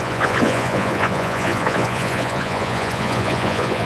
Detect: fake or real fake